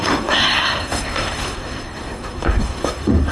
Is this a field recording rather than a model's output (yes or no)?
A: no